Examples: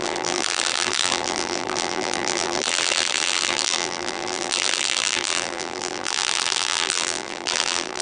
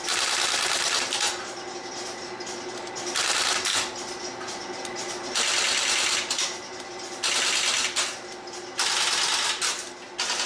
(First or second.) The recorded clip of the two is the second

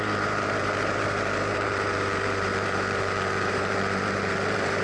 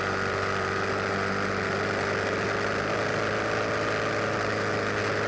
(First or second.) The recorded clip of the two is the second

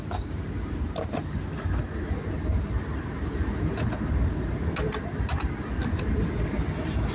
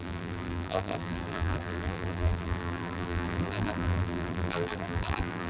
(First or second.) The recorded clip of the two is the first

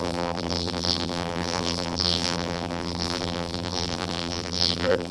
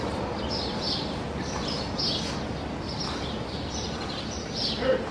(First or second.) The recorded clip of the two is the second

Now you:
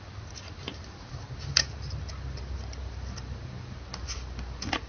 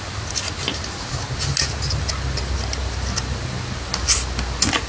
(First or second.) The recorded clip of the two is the second